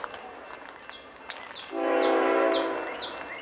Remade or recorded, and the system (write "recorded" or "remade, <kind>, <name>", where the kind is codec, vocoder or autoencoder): recorded